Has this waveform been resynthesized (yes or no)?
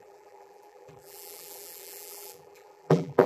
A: yes